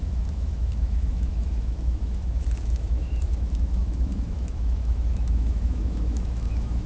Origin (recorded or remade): remade